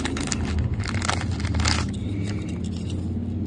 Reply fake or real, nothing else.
real